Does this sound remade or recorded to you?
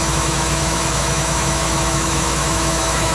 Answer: remade